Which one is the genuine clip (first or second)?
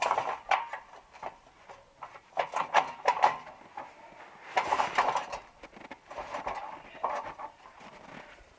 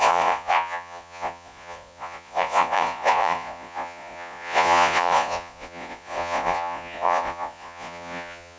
first